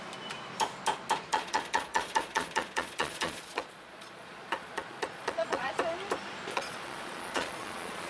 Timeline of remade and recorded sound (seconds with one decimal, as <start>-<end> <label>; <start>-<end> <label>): 0.0-1.3 recorded; 1.3-5.7 remade; 5.7-6.5 recorded; 6.5-8.1 remade